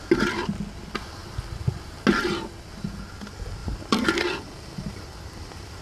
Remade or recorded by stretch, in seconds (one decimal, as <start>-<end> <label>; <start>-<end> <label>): 0.0-1.2 recorded; 1.2-1.9 remade; 1.9-3.6 recorded; 3.6-5.8 remade